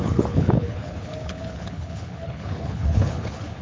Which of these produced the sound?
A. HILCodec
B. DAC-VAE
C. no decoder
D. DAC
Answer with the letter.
A